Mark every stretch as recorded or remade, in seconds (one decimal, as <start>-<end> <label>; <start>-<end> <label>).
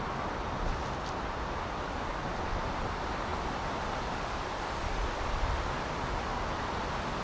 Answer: 0.0-7.2 recorded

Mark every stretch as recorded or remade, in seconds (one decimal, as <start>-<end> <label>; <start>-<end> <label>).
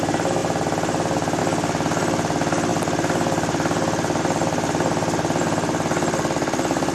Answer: 0.0-6.9 recorded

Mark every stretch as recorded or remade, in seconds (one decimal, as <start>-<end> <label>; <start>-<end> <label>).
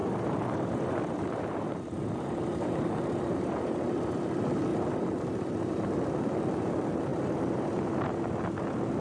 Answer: 0.0-4.3 remade; 4.3-4.7 recorded; 4.7-6.0 remade; 6.0-7.1 recorded; 7.1-8.2 remade; 8.2-9.0 recorded